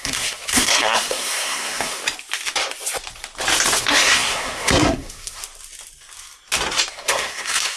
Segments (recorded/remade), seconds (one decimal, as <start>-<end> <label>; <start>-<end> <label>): 0.0-2.0 remade; 2.0-3.8 recorded; 3.8-5.4 remade; 5.4-6.9 recorded; 6.9-7.8 remade